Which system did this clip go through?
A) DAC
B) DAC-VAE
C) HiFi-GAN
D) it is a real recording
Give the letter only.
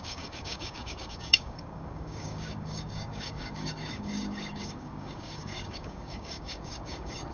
A